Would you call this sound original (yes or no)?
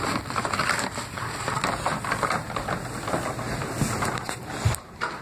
yes